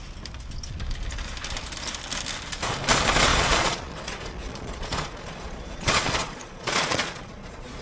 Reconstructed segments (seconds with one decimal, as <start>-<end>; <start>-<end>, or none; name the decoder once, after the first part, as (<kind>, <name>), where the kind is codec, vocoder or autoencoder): 3.3-7.8 (vocoder, Vocos)